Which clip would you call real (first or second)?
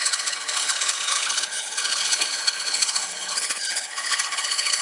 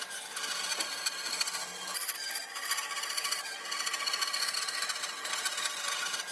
second